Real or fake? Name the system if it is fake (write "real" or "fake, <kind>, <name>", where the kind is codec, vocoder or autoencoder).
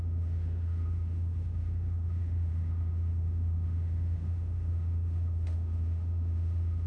fake, autoencoder, DAC-VAE